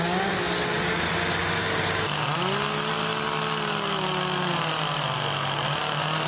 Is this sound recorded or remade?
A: recorded